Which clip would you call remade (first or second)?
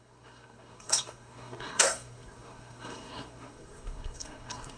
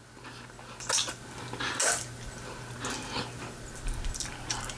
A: first